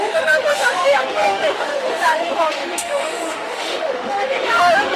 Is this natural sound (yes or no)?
no